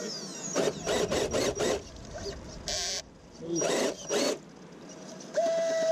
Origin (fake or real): real